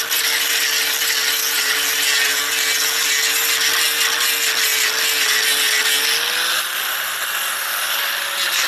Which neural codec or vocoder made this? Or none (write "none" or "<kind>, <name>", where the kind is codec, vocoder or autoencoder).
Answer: none